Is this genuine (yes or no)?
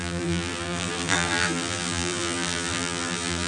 no